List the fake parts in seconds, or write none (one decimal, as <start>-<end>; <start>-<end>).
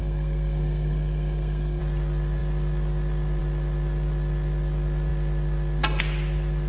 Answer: 0.0-1.8